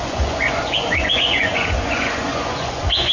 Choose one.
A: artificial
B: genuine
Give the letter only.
A